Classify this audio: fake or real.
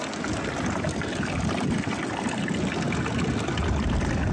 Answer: real